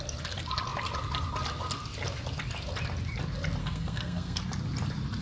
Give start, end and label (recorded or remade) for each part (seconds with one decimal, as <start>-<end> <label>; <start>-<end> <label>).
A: 0.0-3.6 recorded; 3.6-4.4 remade; 4.4-5.2 recorded